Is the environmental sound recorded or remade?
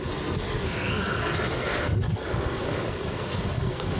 remade